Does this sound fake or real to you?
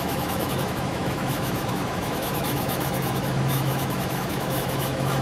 fake